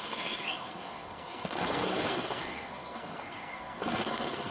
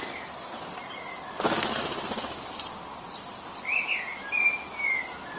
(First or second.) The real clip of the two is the second